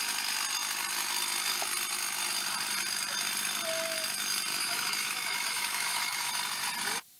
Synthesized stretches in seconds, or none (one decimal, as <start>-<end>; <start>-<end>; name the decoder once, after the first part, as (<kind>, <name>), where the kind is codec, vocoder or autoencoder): 4.5-6.3 (autoencoder, DAC-VAE)